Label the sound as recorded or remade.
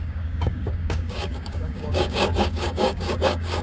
remade